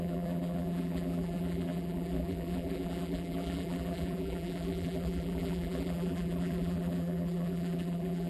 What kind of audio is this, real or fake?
fake